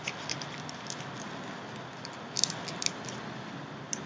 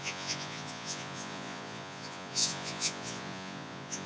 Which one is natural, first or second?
first